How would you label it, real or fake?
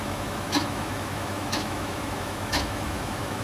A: fake